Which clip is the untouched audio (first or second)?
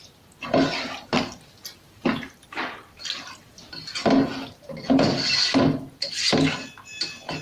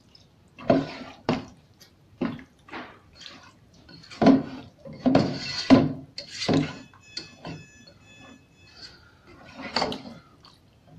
first